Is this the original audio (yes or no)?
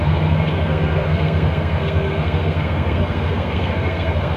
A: no